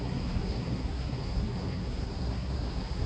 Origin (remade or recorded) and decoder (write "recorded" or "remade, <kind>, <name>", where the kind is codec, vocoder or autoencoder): remade, codec, SNAC